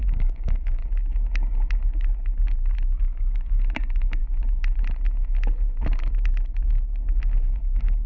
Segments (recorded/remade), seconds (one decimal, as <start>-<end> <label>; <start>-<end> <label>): 0.0-0.8 remade; 0.8-3.0 recorded; 3.0-4.2 remade; 4.2-7.6 recorded; 7.6-8.1 remade